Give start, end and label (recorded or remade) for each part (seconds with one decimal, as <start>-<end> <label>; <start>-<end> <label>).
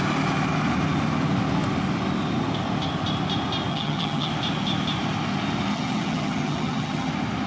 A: 0.0-3.7 recorded; 3.7-4.3 remade; 4.3-5.7 recorded; 5.7-7.1 remade; 7.1-7.5 recorded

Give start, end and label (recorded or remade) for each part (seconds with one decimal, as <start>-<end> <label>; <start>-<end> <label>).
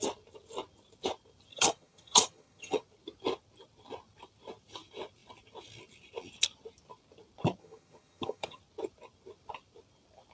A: 0.0-1.5 recorded; 1.5-2.8 remade; 2.8-7.6 recorded; 7.6-8.6 remade; 8.6-10.3 recorded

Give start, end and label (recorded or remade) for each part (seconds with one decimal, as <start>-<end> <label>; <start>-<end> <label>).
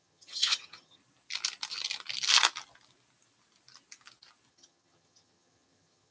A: 0.0-1.0 remade; 1.0-4.5 recorded; 4.5-6.1 remade